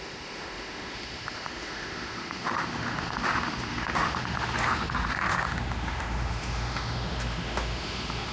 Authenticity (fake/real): fake